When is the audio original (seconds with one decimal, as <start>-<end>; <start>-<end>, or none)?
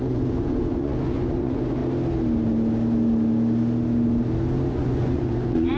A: 1.8-4.7